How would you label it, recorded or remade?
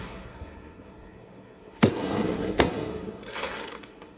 remade